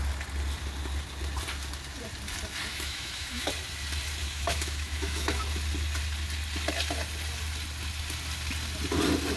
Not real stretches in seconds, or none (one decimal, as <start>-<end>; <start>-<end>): 2.7-3.5; 4.2-5.4